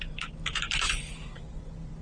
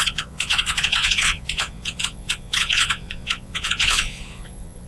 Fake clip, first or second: second